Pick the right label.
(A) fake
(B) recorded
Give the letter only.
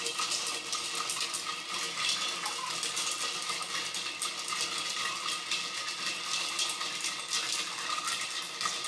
B